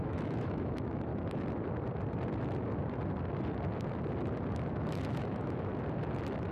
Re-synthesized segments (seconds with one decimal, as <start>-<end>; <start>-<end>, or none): 0.0-1.1; 4.7-5.7